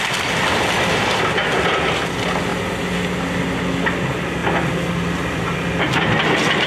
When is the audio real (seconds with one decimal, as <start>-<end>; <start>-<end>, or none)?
0.0-6.7